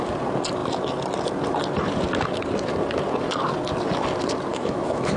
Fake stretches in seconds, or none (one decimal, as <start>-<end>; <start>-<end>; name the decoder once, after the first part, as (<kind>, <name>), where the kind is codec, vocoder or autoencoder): 4.5-5.2 (autoencoder, DAC-VAE)